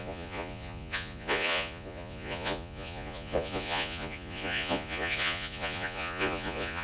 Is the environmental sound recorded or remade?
remade